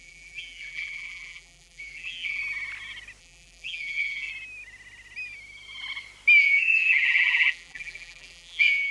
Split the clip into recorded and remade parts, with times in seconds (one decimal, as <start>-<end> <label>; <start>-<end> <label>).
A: 0.0-2.4 remade; 2.4-3.2 recorded; 3.2-4.3 remade; 4.3-6.4 recorded; 6.4-8.9 remade